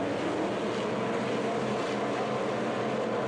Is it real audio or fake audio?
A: real